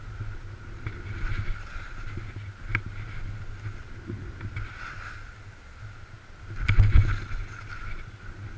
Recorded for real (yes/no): yes